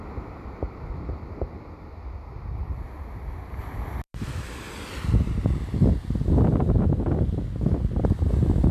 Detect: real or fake real